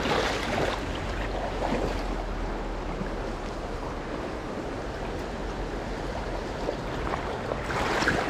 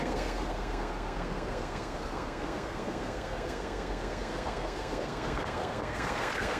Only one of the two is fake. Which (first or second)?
second